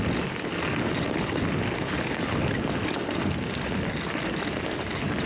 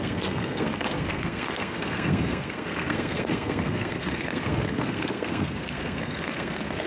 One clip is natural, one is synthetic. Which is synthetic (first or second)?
second